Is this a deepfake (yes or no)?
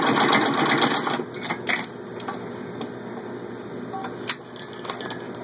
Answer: no